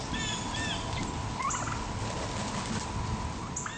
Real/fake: real